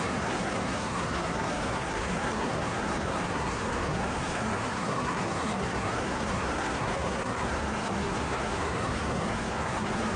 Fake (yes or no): yes